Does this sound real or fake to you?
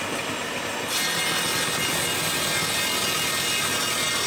real